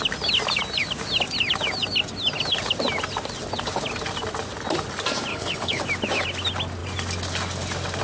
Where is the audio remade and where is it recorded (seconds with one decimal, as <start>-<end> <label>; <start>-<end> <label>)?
0.0-5.3 recorded; 5.3-5.8 remade; 5.8-8.0 recorded